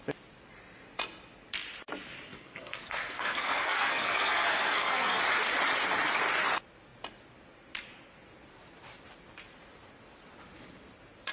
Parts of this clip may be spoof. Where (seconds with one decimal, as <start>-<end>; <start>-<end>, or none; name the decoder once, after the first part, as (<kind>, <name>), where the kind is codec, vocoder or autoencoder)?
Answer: 2.3-5.2 (codec, SNAC)